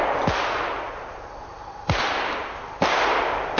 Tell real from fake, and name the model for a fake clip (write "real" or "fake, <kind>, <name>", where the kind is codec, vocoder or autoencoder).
real